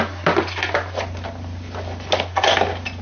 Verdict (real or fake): real